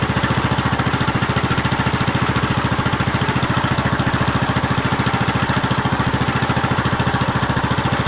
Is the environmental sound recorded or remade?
recorded